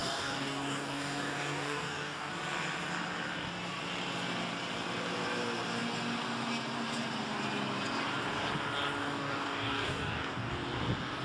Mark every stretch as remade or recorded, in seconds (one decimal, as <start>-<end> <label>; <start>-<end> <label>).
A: 0.0-2.3 remade; 2.3-9.0 recorded; 9.0-10.5 remade; 10.5-11.2 recorded